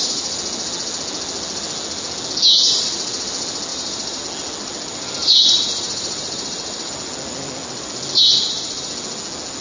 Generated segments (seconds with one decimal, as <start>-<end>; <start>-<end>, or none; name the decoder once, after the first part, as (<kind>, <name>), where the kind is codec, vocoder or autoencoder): 3.7-4.2 (vocoder, BigVGAN v2); 5.2-6.9; 8.4-8.9